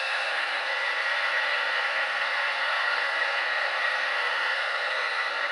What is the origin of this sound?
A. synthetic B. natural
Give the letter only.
A